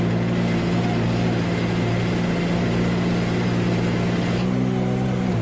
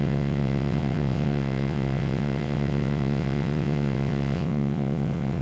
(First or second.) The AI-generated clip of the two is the second